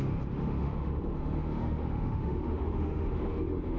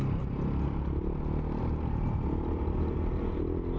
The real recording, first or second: second